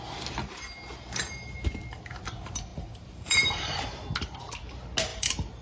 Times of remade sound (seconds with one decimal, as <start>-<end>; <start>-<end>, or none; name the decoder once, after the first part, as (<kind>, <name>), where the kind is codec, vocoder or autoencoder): 2.7-3.8 (vocoder, BigVGAN v2); 5.1-5.6